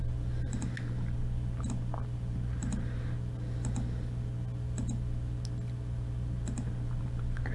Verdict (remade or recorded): recorded